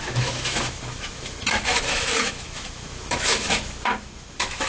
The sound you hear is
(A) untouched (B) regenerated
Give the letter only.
B